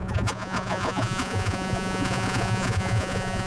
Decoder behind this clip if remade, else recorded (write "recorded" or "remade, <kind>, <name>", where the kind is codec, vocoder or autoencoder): remade, vocoder, Vocos